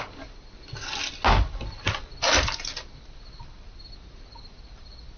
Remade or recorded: recorded